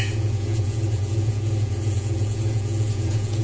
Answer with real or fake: fake